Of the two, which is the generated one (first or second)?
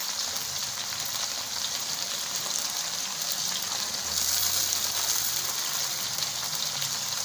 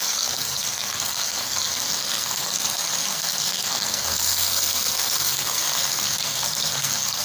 second